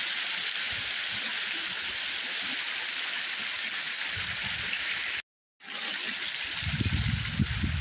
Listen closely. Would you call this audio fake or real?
real